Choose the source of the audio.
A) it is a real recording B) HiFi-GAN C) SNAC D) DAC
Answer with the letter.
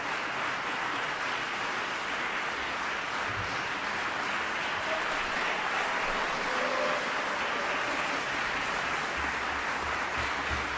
A